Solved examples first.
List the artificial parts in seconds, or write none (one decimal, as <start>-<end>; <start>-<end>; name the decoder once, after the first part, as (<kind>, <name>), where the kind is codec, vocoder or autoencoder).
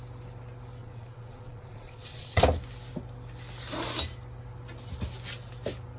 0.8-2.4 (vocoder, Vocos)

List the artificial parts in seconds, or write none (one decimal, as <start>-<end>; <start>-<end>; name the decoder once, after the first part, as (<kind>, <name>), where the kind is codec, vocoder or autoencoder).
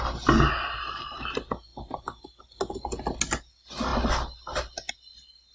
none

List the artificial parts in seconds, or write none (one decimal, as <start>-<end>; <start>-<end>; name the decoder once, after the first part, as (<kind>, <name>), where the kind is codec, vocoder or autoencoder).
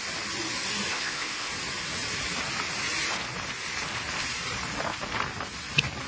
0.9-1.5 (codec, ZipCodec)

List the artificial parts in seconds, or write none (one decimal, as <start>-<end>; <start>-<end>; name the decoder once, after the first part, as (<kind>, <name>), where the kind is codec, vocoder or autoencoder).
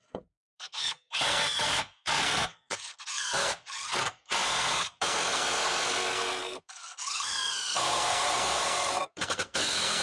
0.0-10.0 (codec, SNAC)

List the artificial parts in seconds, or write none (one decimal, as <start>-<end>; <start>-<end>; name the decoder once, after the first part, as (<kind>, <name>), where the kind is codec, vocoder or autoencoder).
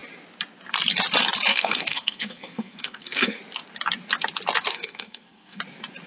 1.5-3.4 (codec, SNAC); 4.7-5.6